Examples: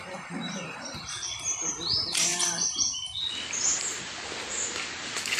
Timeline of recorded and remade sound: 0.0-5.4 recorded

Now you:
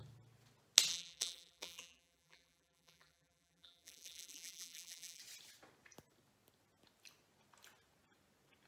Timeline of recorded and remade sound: 0.0-0.9 recorded; 0.9-5.2 remade; 5.2-8.7 recorded

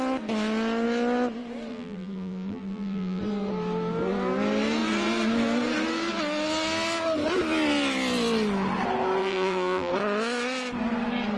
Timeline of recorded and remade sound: 0.0-1.7 recorded; 1.7-3.2 remade; 3.2-9.2 recorded; 9.2-9.9 remade; 9.9-11.4 recorded

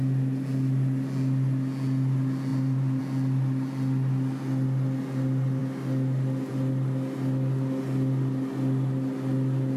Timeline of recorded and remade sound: 0.0-2.5 recorded; 2.5-3.0 remade; 3.0-9.8 recorded

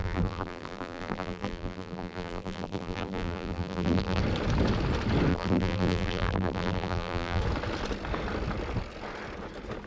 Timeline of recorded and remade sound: 0.0-4.2 remade; 4.2-5.3 recorded; 5.3-7.4 remade; 7.4-9.9 recorded